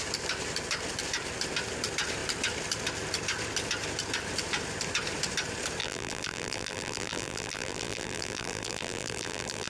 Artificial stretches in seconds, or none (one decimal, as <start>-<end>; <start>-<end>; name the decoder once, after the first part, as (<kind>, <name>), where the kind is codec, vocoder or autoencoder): 5.8-9.7 (vocoder, BigVGAN v2)